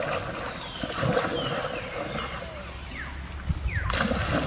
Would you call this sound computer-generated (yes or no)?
no